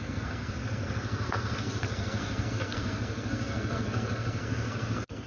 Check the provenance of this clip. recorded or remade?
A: remade